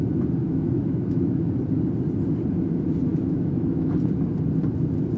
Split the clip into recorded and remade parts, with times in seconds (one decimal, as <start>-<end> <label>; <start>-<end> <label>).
0.0-0.4 recorded; 0.4-1.5 remade; 1.5-3.1 recorded; 3.1-3.9 remade; 3.9-5.2 recorded